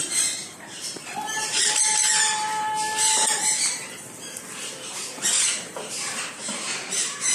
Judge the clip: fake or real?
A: fake